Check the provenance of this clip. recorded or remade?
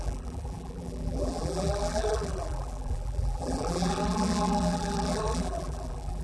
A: remade